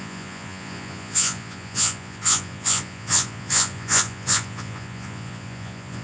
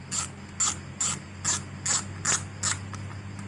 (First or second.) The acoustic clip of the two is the second